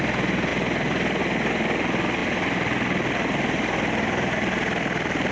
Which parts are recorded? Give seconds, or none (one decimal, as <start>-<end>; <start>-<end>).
0.0-5.3